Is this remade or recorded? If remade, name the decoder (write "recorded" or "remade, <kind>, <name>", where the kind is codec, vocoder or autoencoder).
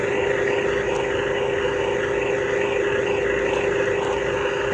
recorded